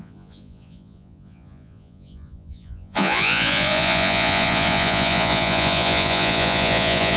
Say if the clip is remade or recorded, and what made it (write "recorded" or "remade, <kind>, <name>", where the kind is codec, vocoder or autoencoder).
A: remade, vocoder, Vocos